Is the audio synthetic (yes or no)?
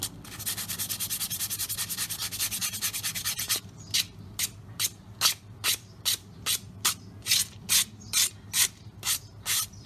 no